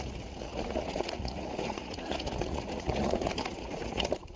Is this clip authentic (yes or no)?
no